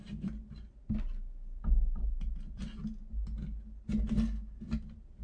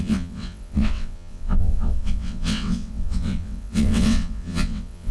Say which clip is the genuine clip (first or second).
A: first